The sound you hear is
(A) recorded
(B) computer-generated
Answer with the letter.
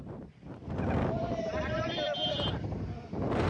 A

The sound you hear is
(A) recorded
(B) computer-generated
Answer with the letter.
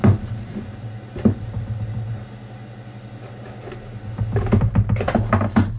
A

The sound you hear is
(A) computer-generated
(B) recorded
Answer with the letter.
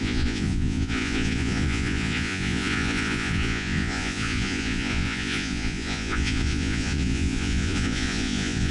A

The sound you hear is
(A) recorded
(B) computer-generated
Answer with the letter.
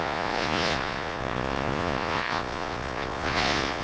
B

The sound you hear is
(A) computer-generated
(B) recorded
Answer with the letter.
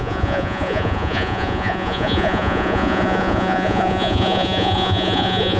A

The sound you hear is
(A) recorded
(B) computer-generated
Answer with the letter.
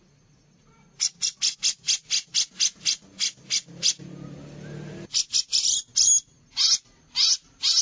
A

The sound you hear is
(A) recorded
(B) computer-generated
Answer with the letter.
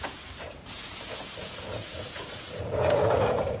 B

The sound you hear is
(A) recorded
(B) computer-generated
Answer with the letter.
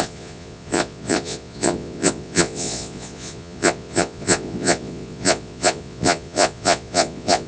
B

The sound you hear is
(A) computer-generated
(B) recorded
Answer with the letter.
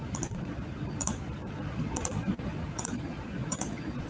A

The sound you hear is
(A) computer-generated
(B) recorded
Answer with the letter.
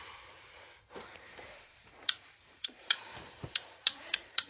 A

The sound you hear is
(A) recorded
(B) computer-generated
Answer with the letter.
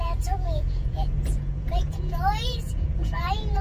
B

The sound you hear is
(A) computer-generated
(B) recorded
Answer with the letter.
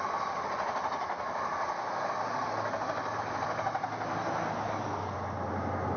B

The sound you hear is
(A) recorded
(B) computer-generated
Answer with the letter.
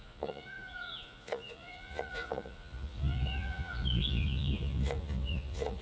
B